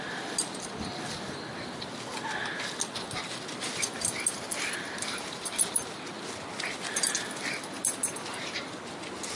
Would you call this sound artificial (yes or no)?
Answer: no